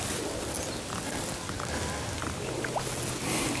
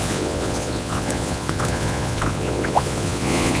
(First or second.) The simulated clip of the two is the second